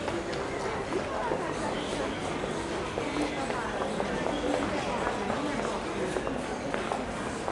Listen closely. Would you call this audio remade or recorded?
recorded